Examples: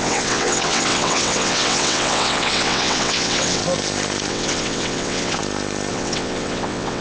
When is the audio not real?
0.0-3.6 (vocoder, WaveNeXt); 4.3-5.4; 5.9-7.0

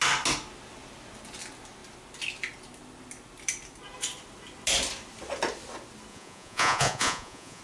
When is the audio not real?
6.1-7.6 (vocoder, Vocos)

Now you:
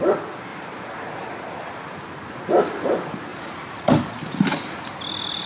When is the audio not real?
3.3-3.9 (vocoder, BigVGAN v2)

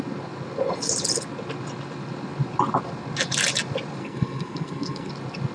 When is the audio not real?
4.0-5.1 (codec, SNAC)

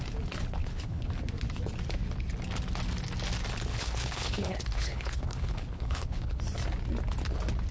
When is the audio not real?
0.6-1.1 (codec, HILCodec); 3.7-6.4

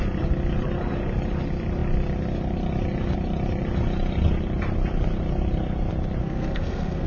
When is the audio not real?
6.2-7.1 (codec, SNAC)